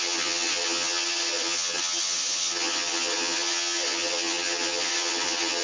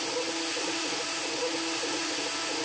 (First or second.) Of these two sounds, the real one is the second